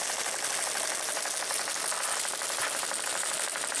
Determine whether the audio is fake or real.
real